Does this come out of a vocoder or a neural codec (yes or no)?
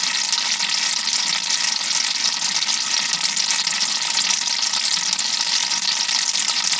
no